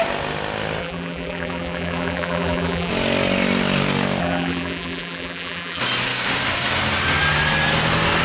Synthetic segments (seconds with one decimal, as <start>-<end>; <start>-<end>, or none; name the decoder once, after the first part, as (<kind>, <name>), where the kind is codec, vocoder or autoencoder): 0.8-2.9 (vocoder, BigVGAN v2); 4.2-5.8